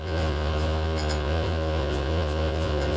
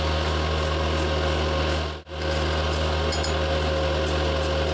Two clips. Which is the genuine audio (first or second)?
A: second